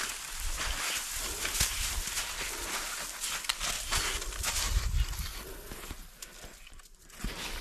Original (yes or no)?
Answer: yes